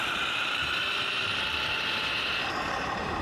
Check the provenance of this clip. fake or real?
fake